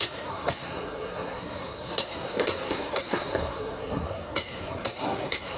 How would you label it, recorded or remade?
remade